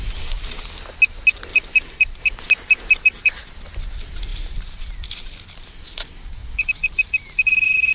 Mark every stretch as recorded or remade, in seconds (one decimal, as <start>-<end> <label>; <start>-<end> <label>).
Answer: 0.0-1.5 recorded; 1.5-3.6 remade; 3.6-6.4 recorded; 6.4-7.9 remade